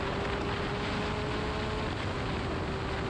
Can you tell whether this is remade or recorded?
recorded